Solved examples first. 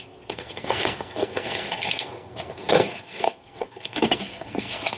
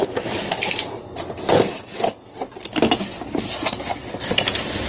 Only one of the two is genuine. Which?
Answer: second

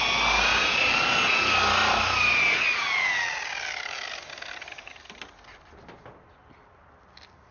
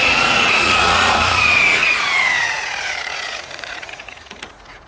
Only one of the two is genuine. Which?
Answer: first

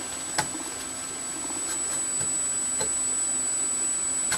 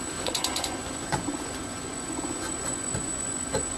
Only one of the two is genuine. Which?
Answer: first